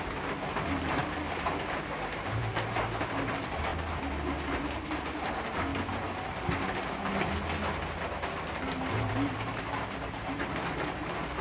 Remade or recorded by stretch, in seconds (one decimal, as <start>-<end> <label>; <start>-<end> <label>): 0.0-3.7 remade; 3.7-4.5 recorded; 4.5-5.7 remade; 5.7-8.9 recorded; 8.9-11.4 remade